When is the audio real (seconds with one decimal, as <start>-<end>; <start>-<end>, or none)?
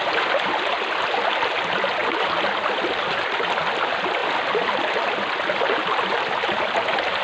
0.0-2.0; 3.1-7.2